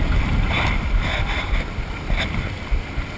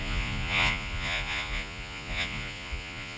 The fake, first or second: second